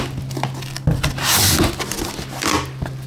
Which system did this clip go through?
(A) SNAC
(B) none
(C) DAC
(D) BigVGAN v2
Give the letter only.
B